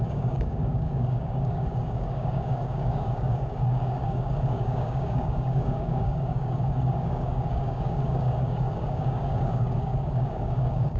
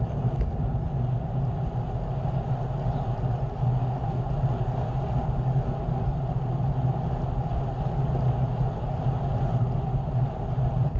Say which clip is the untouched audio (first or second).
second